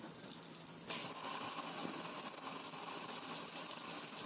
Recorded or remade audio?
recorded